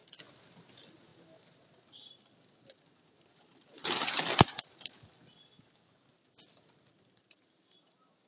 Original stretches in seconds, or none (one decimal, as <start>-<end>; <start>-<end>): 0.7-1.1; 5.7-8.3